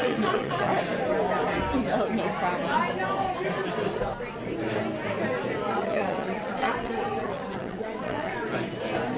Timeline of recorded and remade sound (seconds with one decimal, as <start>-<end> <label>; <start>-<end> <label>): 0.0-0.7 remade; 0.7-5.7 recorded; 5.7-8.3 remade; 8.3-9.2 recorded